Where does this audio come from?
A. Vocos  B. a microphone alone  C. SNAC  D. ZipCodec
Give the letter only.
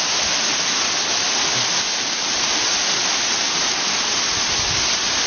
B